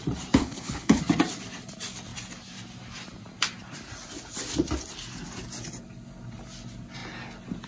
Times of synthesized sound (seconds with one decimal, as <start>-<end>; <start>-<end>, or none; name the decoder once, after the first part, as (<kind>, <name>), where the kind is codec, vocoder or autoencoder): 0.4-1.0 (codec, HILCodec)